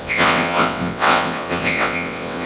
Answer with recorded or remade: remade